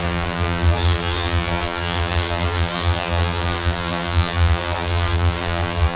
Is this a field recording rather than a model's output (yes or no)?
no